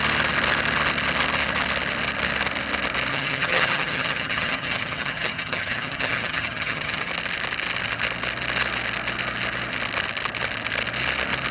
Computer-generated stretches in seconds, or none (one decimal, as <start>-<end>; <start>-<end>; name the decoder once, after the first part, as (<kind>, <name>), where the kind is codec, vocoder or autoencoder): 3.1-7.1 (vocoder, HiFi-GAN)